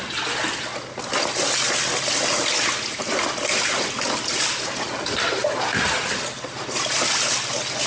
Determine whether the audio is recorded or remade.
recorded